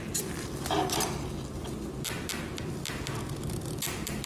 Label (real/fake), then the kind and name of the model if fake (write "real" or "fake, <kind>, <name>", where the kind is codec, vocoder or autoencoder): real